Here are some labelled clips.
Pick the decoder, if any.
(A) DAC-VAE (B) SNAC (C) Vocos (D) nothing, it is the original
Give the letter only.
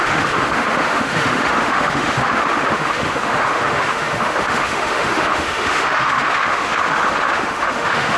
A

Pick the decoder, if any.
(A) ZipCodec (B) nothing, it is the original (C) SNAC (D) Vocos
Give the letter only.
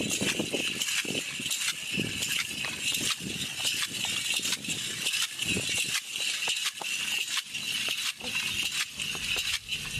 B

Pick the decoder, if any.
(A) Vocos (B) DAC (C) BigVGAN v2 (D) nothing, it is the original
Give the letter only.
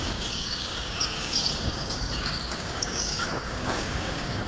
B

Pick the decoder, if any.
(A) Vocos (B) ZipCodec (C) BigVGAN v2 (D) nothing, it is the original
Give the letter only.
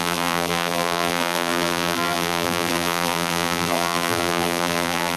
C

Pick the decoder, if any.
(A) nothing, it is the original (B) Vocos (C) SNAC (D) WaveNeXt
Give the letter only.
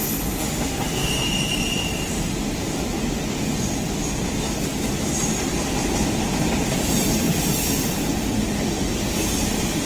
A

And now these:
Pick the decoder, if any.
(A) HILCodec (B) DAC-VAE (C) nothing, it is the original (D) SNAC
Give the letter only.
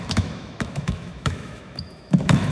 B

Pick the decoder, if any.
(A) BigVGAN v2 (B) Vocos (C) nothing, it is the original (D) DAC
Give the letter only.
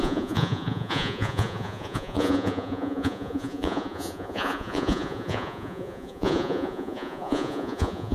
B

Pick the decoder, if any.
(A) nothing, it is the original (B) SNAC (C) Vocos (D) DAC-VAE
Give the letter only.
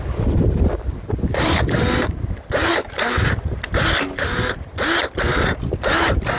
A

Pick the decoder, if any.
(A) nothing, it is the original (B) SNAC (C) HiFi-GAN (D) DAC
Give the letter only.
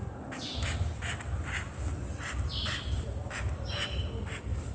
A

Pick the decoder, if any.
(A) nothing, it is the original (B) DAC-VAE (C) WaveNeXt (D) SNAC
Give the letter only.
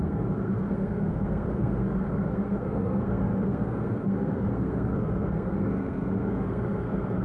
D